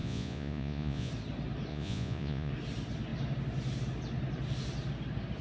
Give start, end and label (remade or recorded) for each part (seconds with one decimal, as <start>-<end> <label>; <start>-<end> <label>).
0.0-1.1 remade; 1.1-1.7 recorded; 1.7-2.5 remade; 2.5-5.4 recorded